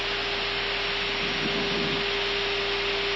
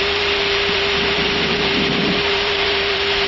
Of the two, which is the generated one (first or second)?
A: second